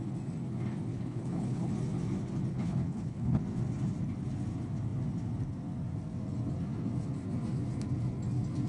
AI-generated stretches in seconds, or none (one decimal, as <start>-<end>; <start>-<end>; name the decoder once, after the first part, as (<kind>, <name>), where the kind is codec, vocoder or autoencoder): 0.9-1.7 (codec, HILCodec); 2.5-3.4